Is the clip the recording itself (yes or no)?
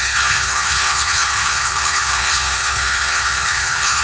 no